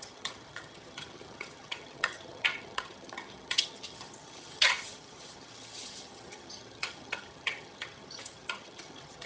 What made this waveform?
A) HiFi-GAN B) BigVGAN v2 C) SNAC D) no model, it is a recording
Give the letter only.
A